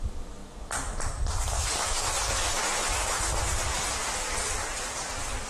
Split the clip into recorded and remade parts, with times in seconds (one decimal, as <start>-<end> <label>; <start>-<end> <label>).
0.0-4.6 recorded; 4.6-5.5 remade